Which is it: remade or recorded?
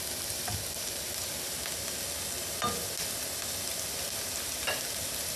recorded